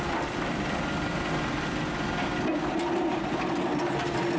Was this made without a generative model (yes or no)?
yes